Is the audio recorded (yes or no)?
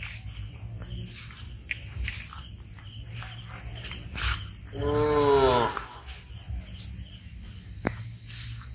yes